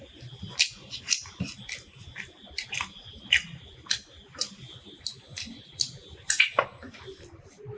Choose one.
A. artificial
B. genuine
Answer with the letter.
B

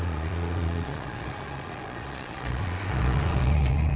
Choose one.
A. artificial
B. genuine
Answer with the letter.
A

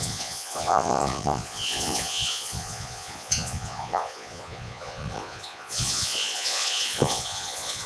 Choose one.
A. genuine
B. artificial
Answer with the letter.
B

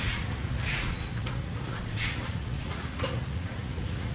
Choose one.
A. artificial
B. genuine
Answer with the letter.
A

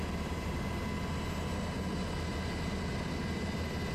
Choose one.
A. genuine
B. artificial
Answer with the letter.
A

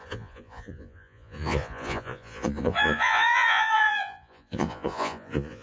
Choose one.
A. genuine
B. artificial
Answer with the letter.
B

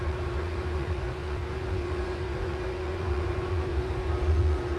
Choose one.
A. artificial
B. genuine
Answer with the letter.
A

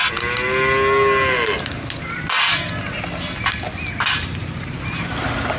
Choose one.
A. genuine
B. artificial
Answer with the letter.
A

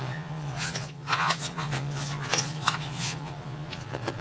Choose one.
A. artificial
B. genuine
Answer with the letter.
A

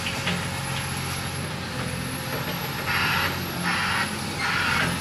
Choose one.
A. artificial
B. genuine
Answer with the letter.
B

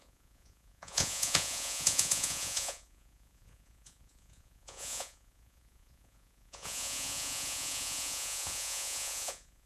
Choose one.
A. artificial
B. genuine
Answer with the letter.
A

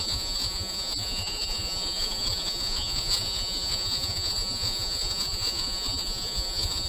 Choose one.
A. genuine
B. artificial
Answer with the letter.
B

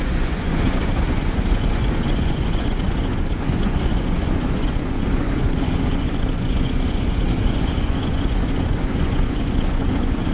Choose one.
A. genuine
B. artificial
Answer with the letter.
B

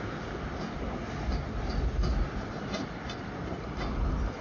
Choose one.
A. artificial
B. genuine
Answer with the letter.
B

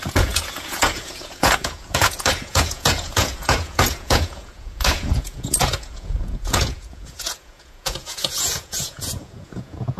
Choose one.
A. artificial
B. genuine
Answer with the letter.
A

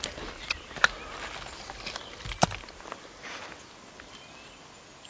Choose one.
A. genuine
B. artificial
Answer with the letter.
A